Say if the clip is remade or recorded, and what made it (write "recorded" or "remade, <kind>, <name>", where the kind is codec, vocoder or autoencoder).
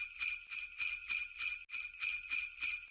recorded